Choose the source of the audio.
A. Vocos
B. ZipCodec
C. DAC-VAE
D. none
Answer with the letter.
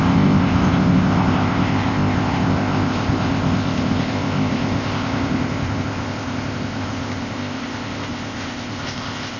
B